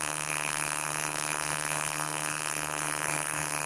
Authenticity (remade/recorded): remade